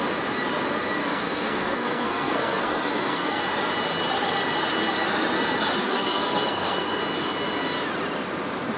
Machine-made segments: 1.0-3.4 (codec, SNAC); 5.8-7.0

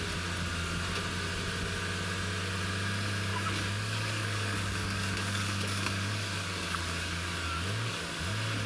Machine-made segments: 3.3-8.2 (codec, DAC)